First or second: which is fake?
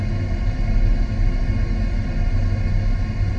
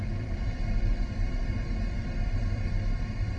second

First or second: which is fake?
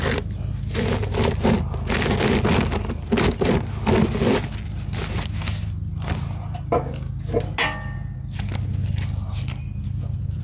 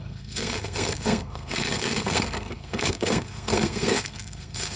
second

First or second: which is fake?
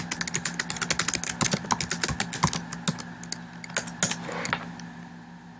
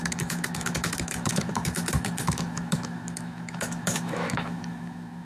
second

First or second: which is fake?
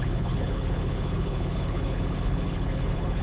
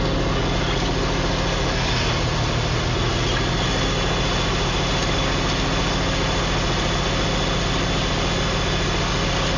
first